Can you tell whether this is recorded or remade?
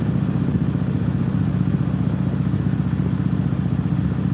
recorded